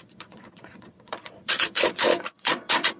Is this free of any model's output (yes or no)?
no